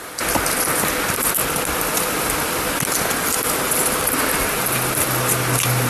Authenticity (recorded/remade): recorded